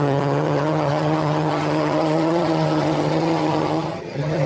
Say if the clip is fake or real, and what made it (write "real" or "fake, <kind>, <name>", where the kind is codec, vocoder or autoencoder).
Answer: fake, vocoder, HiFi-GAN